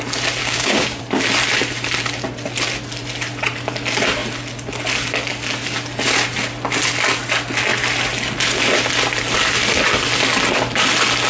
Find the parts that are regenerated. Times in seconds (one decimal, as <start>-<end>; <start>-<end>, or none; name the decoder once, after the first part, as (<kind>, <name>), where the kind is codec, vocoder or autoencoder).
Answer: 0.4-1.0 (codec, DAC)